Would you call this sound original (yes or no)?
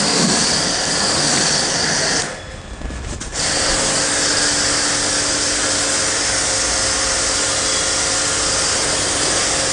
yes